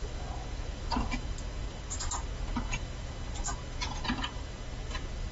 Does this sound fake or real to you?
real